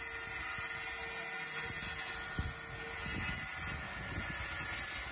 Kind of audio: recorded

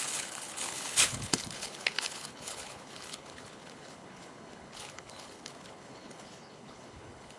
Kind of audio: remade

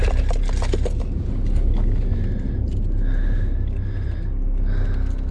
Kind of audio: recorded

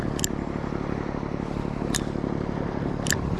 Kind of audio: recorded